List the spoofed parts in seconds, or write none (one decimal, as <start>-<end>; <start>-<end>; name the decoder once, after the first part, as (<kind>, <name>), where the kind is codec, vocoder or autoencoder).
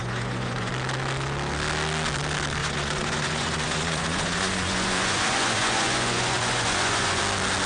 0.0-0.7 (vocoder, Vocos); 2.6-7.2